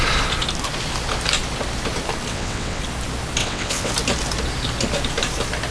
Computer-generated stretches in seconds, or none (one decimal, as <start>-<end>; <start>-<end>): 2.3-2.8; 3.4-3.9